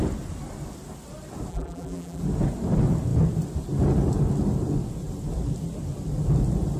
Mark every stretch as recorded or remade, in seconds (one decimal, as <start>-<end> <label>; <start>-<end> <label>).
0.0-1.5 recorded; 1.5-2.2 remade; 2.2-6.8 recorded